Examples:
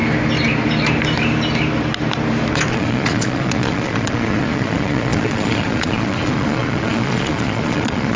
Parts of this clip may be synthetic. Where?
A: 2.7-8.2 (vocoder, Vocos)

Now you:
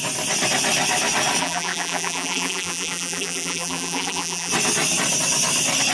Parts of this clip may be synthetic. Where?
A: 1.4-4.5 (vocoder, BigVGAN v2)

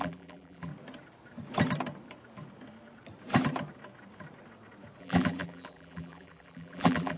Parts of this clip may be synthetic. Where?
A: 0.0-0.7 (vocoder, BigVGAN v2); 5.0-7.2

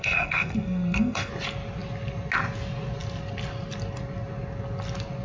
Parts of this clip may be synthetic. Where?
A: 0.0-1.3 (codec, SNAC)

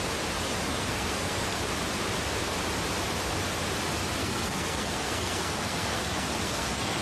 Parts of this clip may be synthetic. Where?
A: 0.7-1.6 (codec, SNAC); 4.2-7.0

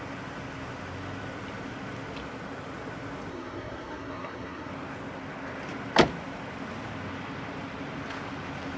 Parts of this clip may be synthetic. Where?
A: 3.3-4.7 (codec, SNAC)

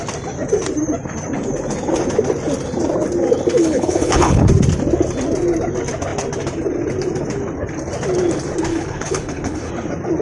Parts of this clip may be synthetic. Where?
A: 3.6-4.5 (codec, HILCodec); 8.7-9.7